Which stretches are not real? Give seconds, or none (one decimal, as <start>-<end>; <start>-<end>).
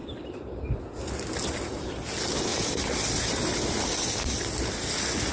0.0-0.8